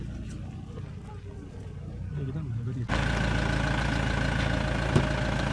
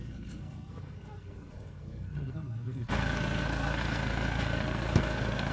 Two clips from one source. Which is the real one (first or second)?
first